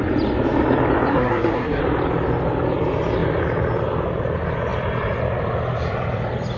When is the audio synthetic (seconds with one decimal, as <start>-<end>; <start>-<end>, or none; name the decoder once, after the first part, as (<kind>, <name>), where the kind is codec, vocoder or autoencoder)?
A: 1.1-1.8 (codec, SNAC)